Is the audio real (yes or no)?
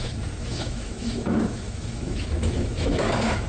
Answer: no